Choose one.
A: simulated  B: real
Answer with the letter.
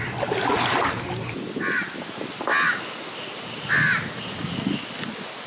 B